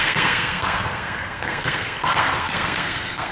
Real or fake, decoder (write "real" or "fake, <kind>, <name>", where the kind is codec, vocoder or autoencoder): fake, codec, SNAC